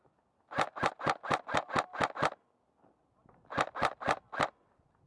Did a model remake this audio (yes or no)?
no